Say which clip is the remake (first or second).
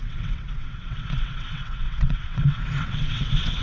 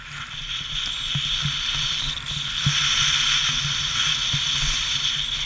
first